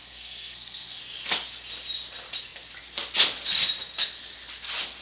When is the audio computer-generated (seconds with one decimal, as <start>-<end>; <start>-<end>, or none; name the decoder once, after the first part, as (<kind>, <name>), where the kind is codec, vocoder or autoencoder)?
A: 0.0-1.0 (codec, SNAC)